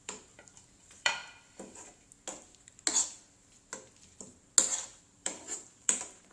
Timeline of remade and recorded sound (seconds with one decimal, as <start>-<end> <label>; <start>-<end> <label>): 0.0-1.2 remade; 1.2-5.0 recorded; 5.0-6.3 remade